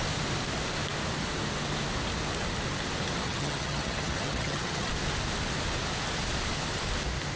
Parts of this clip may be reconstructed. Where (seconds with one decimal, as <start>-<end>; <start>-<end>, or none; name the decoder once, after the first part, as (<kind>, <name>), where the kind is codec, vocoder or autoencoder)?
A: 3.2-4.9 (vocoder, HiFi-GAN)